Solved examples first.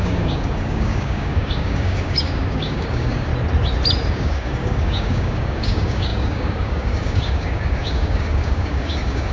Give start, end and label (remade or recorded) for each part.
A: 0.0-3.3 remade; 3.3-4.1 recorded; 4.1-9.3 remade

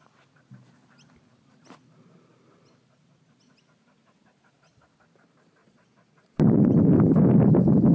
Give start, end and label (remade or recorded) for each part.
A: 0.0-5.6 recorded; 5.6-6.7 remade; 6.7-7.9 recorded

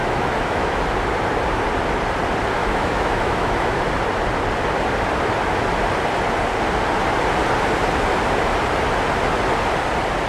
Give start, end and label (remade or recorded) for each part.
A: 0.0-0.8 remade; 0.8-2.6 recorded; 2.6-3.8 remade; 3.8-10.3 recorded

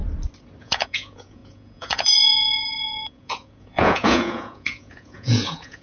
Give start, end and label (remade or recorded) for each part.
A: 0.0-0.6 recorded; 0.6-5.8 remade